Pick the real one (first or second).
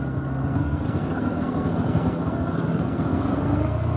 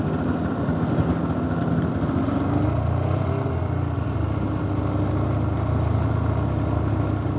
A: second